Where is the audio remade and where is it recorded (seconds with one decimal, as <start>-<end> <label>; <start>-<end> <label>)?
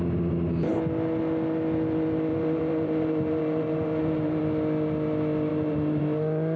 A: 0.0-2.3 recorded; 2.3-4.4 remade; 4.4-5.5 recorded; 5.5-6.0 remade; 6.0-6.6 recorded